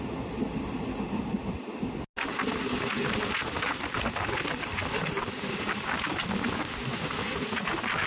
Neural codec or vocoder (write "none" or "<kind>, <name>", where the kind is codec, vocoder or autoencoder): none